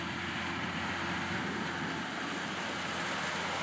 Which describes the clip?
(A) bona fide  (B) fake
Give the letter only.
A